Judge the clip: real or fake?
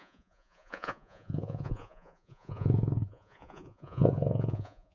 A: fake